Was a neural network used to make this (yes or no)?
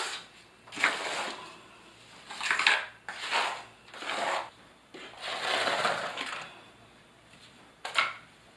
no